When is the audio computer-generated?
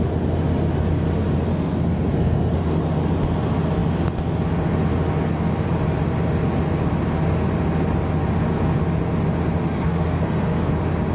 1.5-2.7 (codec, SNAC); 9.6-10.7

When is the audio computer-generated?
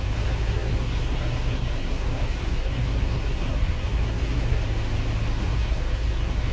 0.0-4.6 (codec, SNAC); 5.4-6.5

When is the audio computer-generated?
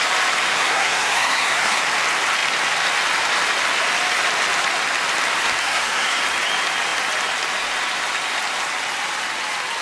0.5-1.8 (codec, SNAC); 5.6-6.2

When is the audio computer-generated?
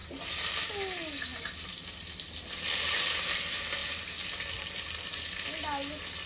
none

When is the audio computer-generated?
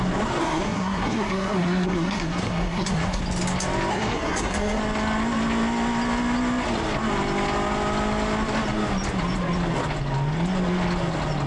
0.4-3.2 (codec, SNAC); 3.9-4.8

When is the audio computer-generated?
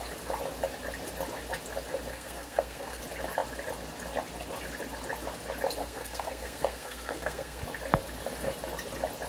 2.1-3.0 (codec, SNAC); 5.8-7.6